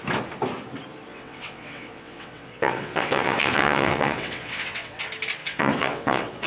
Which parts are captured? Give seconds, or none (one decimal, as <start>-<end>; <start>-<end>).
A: 0.0-1.1; 5.0-5.4